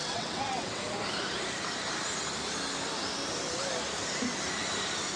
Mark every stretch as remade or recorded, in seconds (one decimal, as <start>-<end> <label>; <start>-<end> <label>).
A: 0.0-0.8 remade; 0.8-5.2 recorded